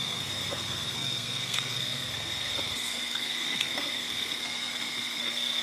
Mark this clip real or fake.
fake